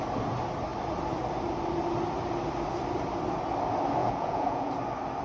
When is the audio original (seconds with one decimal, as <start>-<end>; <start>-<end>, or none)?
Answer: 0.0-4.0; 4.7-5.2